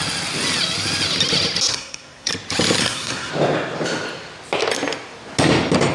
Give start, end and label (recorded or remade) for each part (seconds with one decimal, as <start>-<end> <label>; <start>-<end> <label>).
0.0-1.7 recorded; 1.7-2.3 remade; 2.3-2.8 recorded; 2.8-3.3 remade; 3.3-5.9 recorded